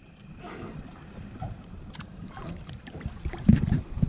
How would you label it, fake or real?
fake